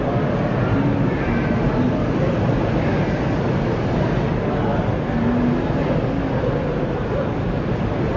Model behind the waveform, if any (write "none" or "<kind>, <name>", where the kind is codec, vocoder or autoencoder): none